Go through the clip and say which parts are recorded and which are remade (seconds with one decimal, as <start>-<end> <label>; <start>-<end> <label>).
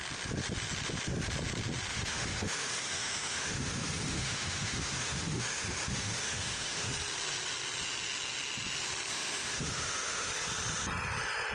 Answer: 0.0-1.9 recorded; 1.9-6.9 remade; 6.9-9.1 recorded; 9.1-10.3 remade; 10.3-11.5 recorded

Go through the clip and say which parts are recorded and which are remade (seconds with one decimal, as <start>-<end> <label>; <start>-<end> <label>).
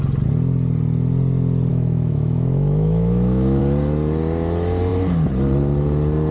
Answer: 0.0-1.7 recorded; 1.7-3.6 remade; 3.6-6.3 recorded